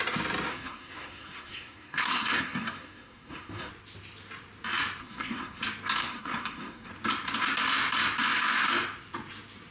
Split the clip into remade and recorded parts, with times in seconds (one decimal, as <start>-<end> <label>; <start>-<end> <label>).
0.0-0.5 recorded; 0.5-3.7 remade; 3.7-5.0 recorded; 5.0-5.6 remade; 5.6-6.0 recorded; 6.0-6.9 remade; 6.9-9.7 recorded